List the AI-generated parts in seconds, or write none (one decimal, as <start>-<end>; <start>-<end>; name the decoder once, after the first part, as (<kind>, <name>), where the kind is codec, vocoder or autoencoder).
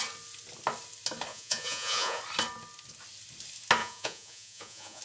1.3-2.2 (vocoder, Vocos); 3.8-5.0